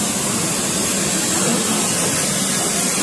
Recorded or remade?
recorded